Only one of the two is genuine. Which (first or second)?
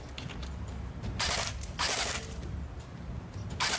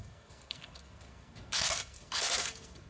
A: first